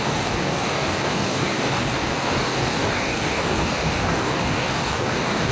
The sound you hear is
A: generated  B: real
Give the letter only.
A